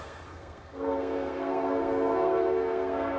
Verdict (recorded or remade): remade